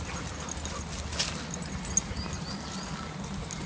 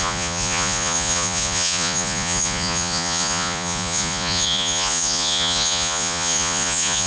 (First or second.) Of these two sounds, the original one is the first